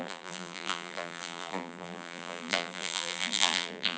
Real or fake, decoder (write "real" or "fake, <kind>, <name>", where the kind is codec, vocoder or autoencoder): fake, vocoder, BigVGAN v2